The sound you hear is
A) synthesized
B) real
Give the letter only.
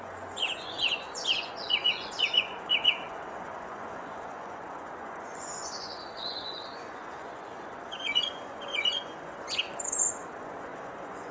A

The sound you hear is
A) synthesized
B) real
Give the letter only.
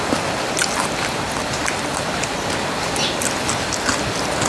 B